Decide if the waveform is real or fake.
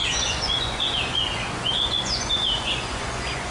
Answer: fake